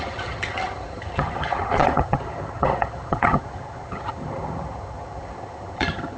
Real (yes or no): no